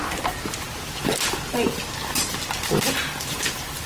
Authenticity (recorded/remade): recorded